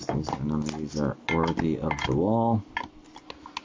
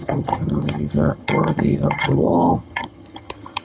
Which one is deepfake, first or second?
second